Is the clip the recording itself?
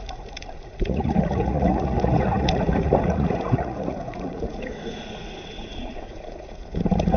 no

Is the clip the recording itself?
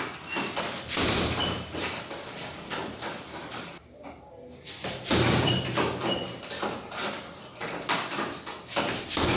no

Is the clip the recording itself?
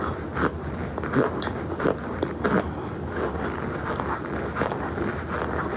yes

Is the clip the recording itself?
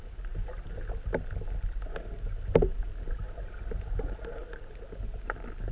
yes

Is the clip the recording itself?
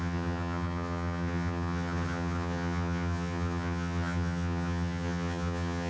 no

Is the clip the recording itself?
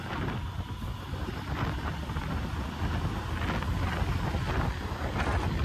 yes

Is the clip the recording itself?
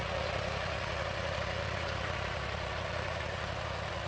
no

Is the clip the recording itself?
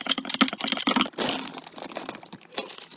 yes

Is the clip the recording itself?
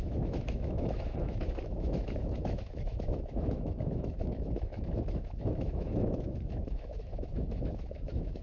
no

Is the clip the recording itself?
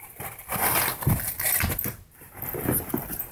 yes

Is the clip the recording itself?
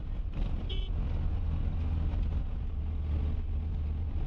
yes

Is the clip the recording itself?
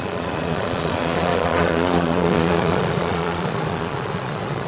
no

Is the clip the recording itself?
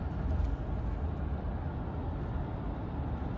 yes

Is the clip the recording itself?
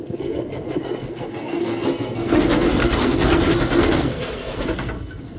no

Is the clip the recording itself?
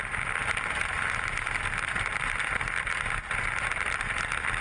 yes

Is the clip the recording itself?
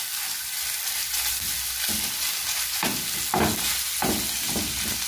yes